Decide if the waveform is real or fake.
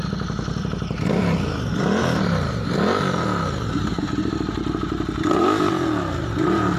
real